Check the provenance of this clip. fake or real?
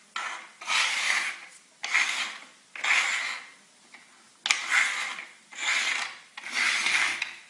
real